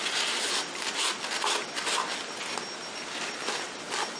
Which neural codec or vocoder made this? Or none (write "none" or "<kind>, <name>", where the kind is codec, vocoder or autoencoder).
none